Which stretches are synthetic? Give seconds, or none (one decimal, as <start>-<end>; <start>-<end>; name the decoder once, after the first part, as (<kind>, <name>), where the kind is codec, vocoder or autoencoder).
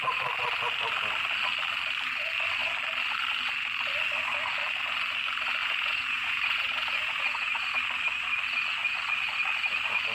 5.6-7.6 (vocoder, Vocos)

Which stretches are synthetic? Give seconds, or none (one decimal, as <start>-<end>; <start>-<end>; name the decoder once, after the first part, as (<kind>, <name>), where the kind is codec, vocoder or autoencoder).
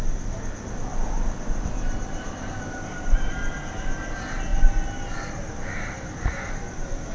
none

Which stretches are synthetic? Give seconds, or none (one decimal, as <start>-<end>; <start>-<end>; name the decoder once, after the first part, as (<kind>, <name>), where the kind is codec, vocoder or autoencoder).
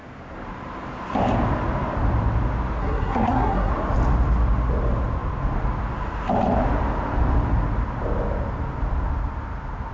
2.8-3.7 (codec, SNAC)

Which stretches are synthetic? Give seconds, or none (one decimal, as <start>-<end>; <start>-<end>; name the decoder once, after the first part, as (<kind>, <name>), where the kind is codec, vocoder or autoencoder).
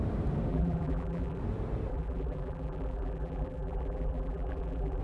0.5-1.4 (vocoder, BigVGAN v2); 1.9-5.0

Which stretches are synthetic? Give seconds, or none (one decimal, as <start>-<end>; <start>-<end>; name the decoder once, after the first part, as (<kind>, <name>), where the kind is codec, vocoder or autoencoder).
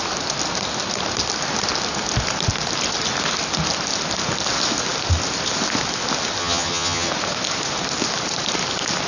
6.4-7.1 (vocoder, HiFi-GAN)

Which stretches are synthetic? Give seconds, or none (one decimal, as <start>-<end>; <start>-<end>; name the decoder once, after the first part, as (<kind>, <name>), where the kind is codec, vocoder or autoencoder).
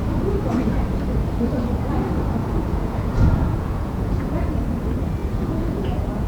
2.4-4.5 (vocoder, Vocos); 5.2-6.3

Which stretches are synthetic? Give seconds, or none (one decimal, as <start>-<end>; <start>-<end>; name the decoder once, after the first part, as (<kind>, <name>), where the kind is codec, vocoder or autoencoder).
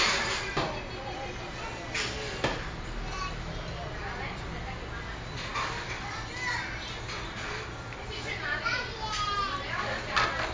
none